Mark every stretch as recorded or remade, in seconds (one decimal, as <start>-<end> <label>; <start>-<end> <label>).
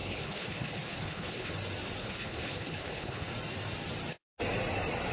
0.0-1.5 remade; 1.5-2.0 recorded; 2.0-3.3 remade; 3.3-5.1 recorded